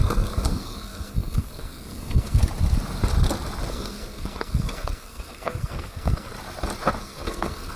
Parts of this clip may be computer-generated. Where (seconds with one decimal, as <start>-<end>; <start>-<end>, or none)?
0.0-2.4; 3.7-6.3; 7.0-7.8